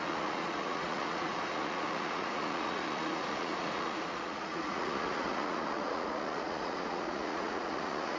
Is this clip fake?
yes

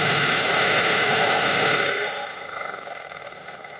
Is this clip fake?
yes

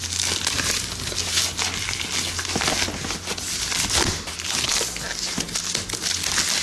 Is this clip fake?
no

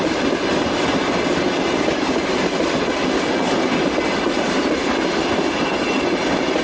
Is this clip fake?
no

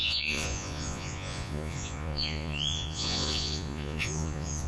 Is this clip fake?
yes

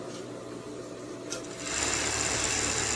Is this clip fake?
no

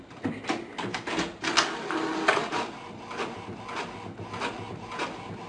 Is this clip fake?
no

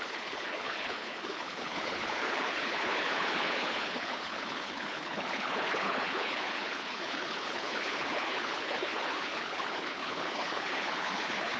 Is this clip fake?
yes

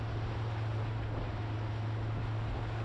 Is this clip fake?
no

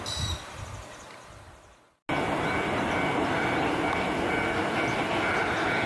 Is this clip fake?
no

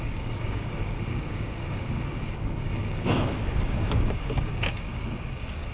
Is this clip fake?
yes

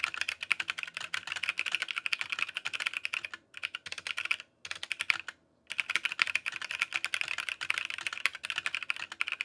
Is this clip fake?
no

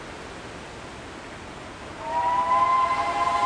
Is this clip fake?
no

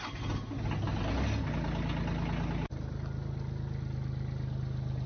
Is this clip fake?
no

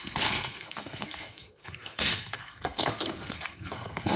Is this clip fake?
yes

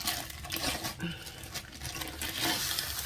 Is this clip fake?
no